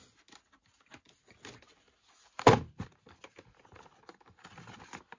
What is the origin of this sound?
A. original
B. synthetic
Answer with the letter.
A